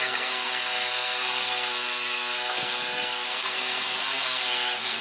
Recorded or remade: remade